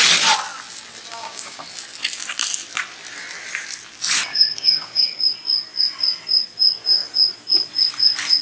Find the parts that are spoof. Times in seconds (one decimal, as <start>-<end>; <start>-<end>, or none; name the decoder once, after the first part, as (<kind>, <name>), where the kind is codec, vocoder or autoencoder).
1.1-1.6 (codec, DAC); 4.3-5.2